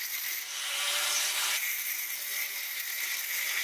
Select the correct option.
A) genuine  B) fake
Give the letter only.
B